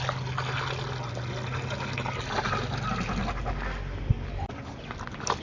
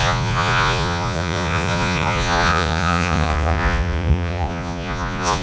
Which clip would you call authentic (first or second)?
first